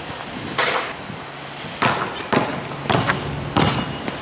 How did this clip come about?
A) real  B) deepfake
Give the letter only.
A